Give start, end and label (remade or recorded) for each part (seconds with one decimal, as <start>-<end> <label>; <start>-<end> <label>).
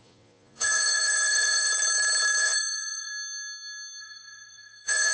0.0-1.7 remade; 1.7-2.4 recorded; 2.4-3.1 remade; 3.1-4.0 recorded; 4.0-5.1 remade